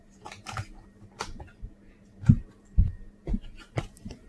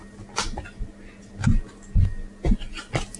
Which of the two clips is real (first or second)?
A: second